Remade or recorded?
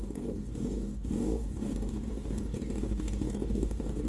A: remade